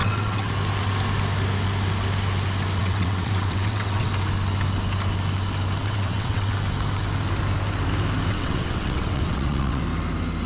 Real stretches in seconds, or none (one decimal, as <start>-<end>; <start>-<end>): 0.5-2.8; 4.1-5.8; 6.5-8.3; 9.8-10.5